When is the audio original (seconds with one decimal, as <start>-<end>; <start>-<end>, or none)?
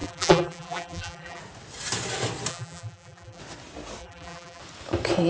1.4-2.5; 3.4-4.0; 4.6-5.3